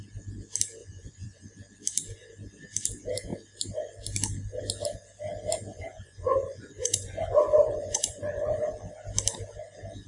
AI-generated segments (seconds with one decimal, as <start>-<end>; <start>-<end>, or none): 0.8-1.5; 5.7-8.7